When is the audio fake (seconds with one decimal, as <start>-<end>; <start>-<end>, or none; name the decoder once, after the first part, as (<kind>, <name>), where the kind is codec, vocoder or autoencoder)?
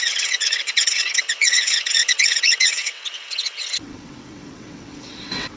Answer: 0.0-5.6 (vocoder, WaveNeXt)